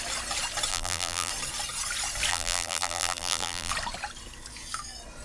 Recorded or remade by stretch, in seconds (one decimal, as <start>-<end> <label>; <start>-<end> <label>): 0.0-0.7 recorded; 0.7-1.3 remade; 1.3-2.3 recorded; 2.3-3.7 remade; 3.7-5.2 recorded